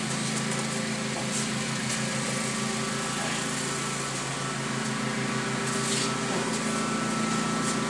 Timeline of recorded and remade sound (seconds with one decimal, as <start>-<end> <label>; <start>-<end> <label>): 0.0-1.2 recorded; 1.2-1.9 remade; 1.9-7.9 recorded